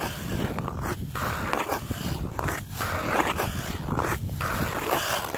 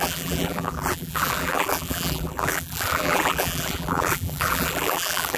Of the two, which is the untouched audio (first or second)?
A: first